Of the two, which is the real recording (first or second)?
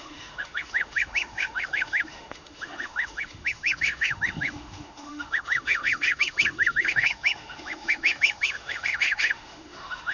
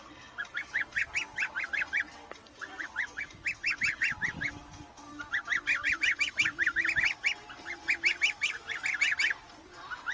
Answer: second